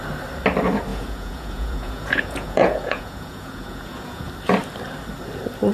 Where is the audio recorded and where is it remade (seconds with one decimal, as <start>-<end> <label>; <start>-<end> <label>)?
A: 0.0-0.9 recorded; 0.9-4.3 remade; 4.3-5.7 recorded